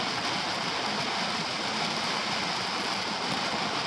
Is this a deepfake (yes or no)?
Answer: no